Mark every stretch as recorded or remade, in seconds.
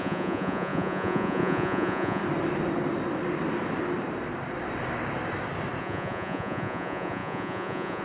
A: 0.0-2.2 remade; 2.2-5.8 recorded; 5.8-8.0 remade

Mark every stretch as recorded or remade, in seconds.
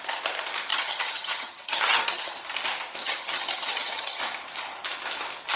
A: 0.0-0.7 recorded; 0.7-2.4 remade; 2.4-3.0 recorded; 3.0-4.2 remade; 4.2-5.6 recorded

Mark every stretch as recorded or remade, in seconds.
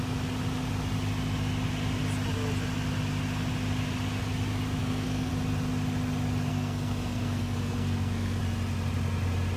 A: 0.0-4.8 recorded; 4.8-5.3 remade; 5.3-6.5 recorded; 6.5-8.4 remade; 8.4-9.6 recorded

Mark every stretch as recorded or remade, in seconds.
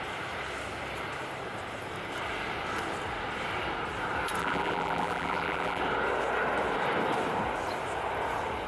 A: 0.0-4.4 recorded; 4.4-5.8 remade; 5.8-8.7 recorded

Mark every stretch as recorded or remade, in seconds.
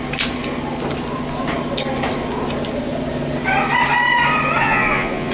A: 0.0-4.6 recorded; 4.6-5.3 remade